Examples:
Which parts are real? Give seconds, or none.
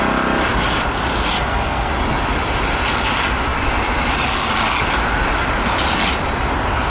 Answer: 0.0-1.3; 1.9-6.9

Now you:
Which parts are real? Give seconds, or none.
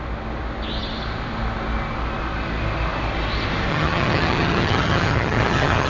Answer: 0.0-3.7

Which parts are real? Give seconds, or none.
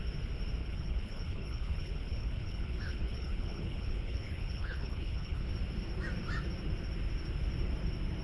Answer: 0.0-0.6; 5.5-8.2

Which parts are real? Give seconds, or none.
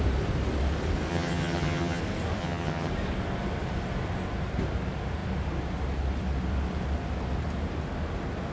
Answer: 0.0-1.1; 2.0-2.4; 2.9-8.5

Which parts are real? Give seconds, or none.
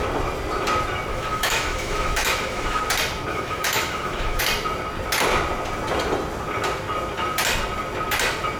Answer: 0.0-1.1; 2.8-3.3; 4.4-8.6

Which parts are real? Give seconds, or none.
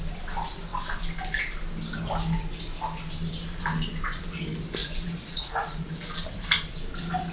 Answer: 0.0-4.8; 6.1-7.3